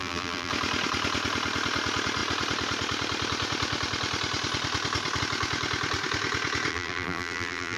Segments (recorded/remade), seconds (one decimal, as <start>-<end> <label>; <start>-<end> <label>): 0.0-0.5 remade; 0.5-6.7 recorded; 6.7-7.8 remade